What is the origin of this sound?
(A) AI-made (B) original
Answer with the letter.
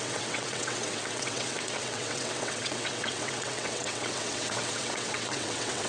A